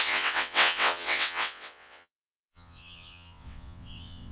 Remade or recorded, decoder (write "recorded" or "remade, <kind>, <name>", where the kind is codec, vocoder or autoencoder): remade, vocoder, WaveNeXt